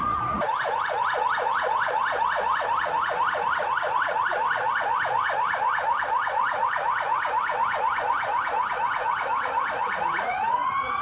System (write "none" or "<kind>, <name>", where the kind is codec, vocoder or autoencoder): vocoder, Vocos